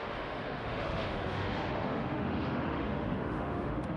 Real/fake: fake